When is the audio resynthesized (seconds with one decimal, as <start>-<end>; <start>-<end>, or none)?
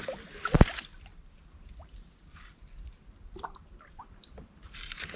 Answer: 0.9-4.0